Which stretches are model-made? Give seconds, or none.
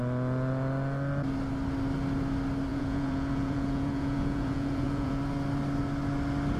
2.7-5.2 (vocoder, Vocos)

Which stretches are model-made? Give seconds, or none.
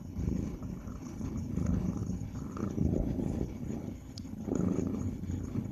0.0-5.7 (codec, HILCodec)